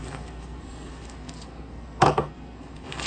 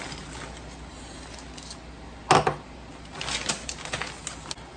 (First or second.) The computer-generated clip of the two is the first